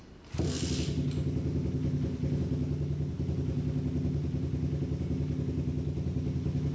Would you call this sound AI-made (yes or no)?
no